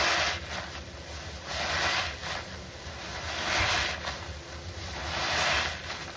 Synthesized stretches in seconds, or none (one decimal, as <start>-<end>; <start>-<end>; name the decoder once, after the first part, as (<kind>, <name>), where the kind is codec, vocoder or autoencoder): none